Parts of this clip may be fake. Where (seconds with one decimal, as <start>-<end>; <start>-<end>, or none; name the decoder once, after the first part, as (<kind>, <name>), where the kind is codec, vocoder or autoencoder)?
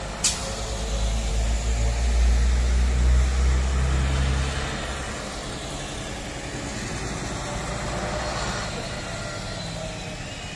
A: none